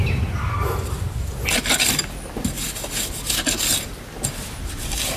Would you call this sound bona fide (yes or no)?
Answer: yes